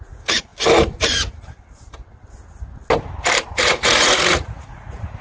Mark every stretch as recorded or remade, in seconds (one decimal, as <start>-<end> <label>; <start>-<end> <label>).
0.0-0.5 remade; 0.5-3.6 recorded; 3.6-5.2 remade